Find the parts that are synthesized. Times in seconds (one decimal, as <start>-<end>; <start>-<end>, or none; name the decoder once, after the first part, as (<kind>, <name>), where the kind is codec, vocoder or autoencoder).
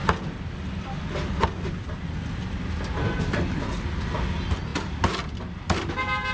none